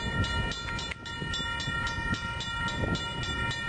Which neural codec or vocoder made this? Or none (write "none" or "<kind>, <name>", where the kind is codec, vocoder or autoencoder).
none